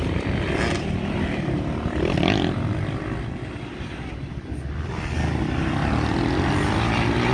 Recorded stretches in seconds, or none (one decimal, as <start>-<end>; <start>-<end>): 0.0-7.3

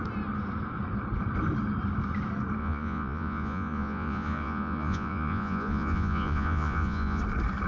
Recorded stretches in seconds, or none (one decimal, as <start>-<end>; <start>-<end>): 0.0-2.6; 7.2-7.7

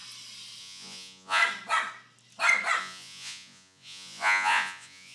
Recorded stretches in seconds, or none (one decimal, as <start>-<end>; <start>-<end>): 0.0-0.6; 1.4-2.8

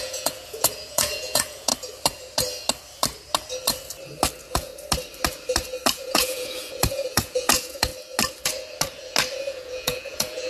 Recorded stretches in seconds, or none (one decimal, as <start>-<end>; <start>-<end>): 1.7-4.3; 4.7-5.9; 7.9-9.5

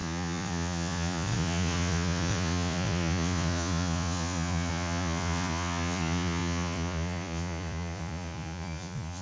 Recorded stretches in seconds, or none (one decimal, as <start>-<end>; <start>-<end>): none

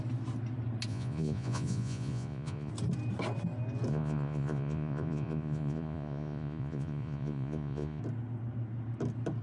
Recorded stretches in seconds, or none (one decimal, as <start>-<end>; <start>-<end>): 0.0-0.9; 2.7-3.9; 8.0-9.4

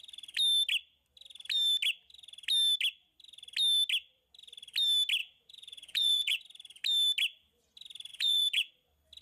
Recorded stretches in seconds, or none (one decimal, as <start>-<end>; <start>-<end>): 0.0-5.2; 6.4-8.1; 8.7-9.2